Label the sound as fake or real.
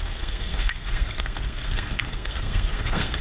fake